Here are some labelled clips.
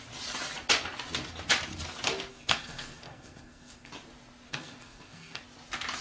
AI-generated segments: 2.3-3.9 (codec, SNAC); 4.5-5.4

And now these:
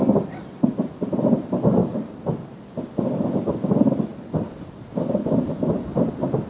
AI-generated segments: 1.8-2.6 (vocoder, BigVGAN v2)

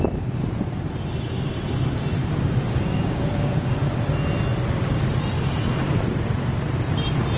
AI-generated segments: 2.2-3.9 (codec, DAC)

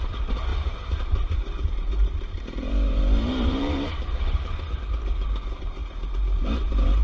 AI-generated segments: 0.0-5.8 (vocoder, BigVGAN v2); 6.4-7.0

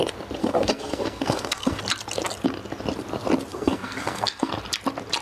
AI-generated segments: 0.4-1.8 (codec, SNAC); 3.5-4.5